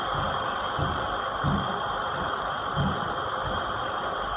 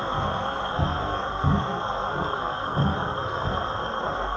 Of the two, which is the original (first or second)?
first